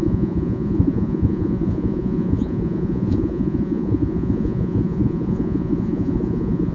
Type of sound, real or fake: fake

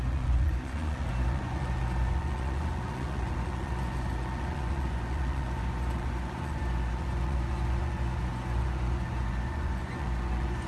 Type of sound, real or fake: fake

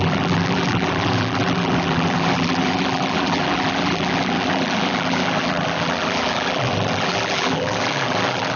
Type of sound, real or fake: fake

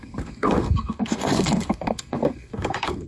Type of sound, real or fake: fake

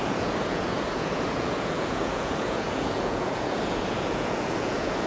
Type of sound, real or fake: fake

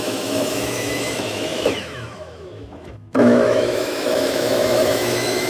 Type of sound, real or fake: fake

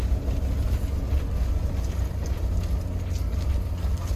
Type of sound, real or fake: real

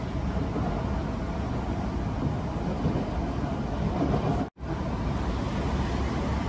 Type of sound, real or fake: real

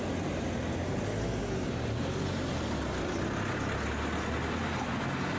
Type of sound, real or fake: real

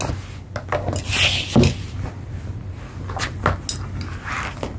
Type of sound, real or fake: real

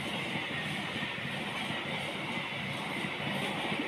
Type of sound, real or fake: real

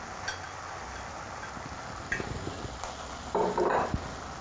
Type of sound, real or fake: real